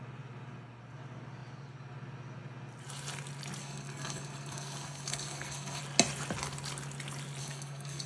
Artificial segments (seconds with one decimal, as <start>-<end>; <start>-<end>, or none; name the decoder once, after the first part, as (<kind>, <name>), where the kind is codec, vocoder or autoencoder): 3.6-5.8 (codec, SNAC); 7.4-8.1